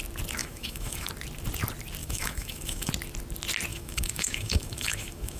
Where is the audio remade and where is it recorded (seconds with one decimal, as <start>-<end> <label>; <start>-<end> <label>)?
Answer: 0.0-0.4 recorded; 0.4-1.1 remade; 1.1-2.0 recorded; 2.0-2.9 remade; 2.9-3.7 recorded; 3.7-5.4 remade